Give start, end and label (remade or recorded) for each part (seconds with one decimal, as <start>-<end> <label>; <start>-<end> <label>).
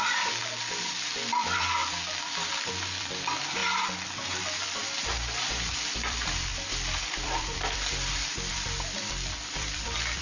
0.0-3.6 remade; 3.6-4.4 recorded; 4.4-10.2 remade